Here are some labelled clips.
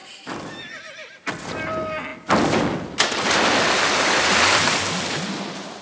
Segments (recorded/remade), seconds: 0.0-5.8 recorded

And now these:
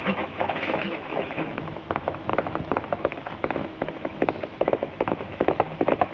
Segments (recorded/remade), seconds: 0.0-6.1 remade

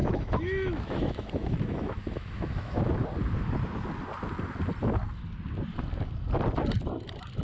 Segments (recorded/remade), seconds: 0.0-2.8 remade; 2.8-7.4 recorded

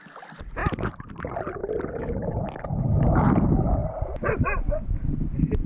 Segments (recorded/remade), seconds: 0.0-5.7 recorded

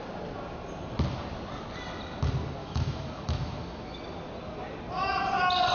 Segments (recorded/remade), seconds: 0.0-2.6 recorded; 2.6-4.0 remade; 4.0-5.7 recorded

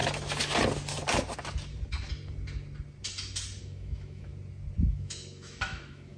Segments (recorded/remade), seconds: 0.0-3.6 recorded; 3.6-4.3 remade; 4.3-4.9 recorded; 4.9-6.2 remade